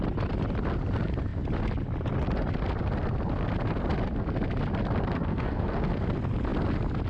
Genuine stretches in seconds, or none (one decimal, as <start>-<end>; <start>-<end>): 0.0-5.3; 5.9-7.1